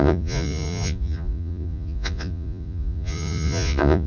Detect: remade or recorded remade